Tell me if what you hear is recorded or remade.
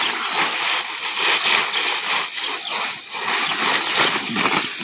recorded